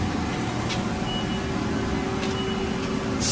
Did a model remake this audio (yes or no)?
no